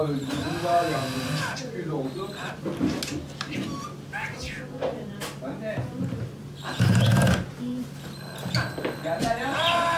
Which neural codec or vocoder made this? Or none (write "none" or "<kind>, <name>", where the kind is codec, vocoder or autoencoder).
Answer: none